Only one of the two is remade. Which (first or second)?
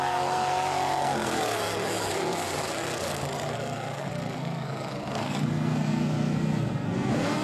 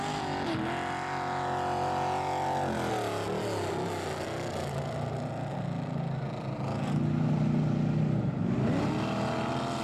first